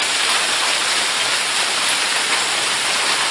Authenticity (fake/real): real